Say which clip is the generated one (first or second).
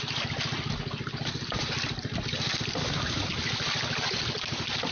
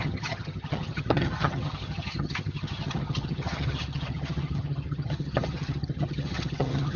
second